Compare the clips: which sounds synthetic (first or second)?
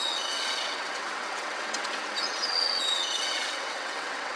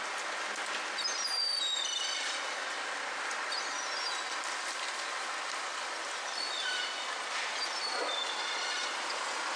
first